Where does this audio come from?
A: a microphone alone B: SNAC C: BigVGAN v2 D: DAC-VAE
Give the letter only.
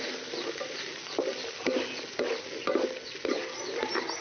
A